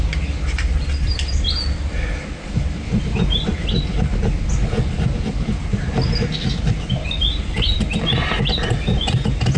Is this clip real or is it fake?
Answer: real